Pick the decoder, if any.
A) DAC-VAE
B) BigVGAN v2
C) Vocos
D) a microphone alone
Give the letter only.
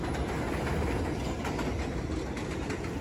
D